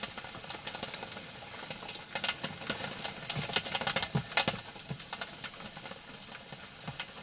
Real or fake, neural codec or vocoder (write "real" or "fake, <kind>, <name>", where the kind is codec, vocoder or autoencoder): real